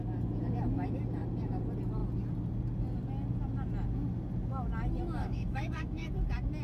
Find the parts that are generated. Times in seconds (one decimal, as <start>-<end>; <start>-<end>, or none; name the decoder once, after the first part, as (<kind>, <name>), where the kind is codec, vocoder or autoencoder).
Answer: 5.2-6.1 (autoencoder, DAC-VAE)